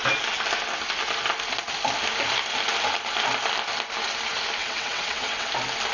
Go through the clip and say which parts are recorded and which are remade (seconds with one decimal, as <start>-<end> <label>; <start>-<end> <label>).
0.0-4.6 recorded; 4.6-5.5 remade; 5.5-5.9 recorded